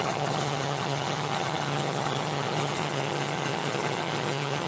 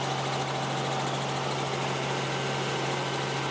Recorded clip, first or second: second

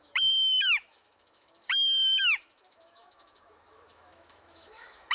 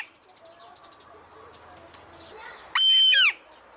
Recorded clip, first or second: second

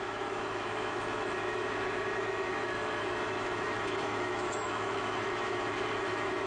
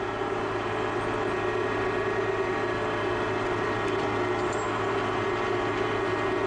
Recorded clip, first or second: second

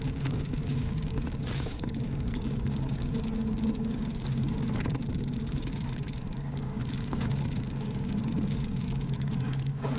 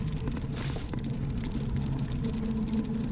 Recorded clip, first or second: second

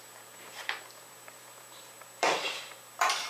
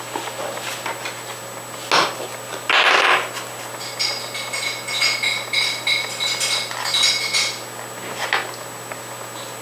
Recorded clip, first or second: second